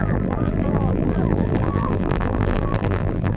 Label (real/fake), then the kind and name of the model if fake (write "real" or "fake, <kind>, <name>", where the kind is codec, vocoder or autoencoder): fake, vocoder, BigVGAN v2